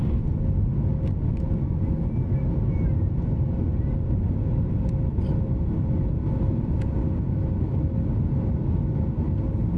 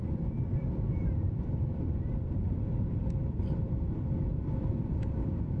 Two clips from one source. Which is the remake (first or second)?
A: second